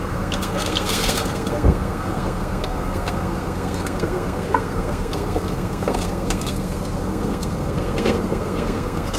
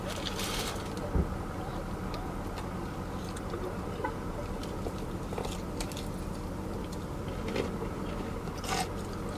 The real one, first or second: second